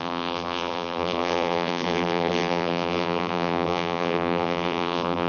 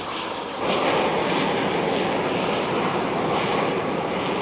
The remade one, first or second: first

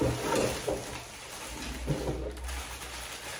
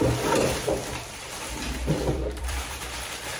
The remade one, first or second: second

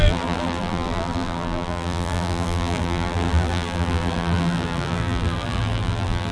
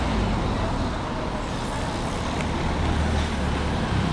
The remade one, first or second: first